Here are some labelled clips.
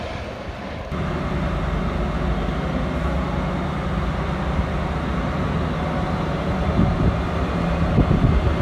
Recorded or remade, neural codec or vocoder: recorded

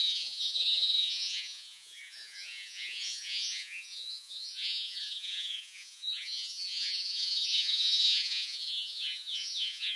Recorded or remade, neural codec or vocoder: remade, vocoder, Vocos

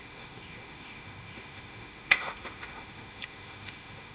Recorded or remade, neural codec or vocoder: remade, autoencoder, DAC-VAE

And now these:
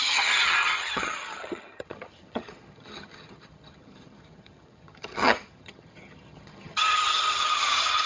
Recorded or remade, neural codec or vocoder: remade, vocoder, HiFi-GAN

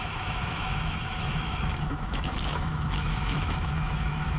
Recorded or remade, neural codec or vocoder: remade, autoencoder, DAC-VAE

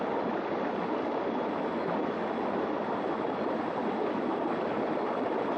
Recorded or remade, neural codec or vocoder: recorded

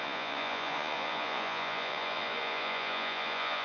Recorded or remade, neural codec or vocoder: remade, vocoder, Vocos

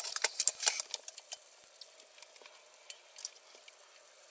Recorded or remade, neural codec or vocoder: recorded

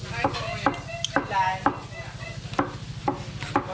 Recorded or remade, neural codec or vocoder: recorded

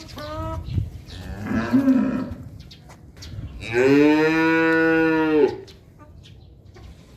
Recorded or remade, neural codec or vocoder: recorded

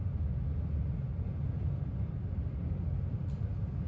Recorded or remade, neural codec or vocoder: recorded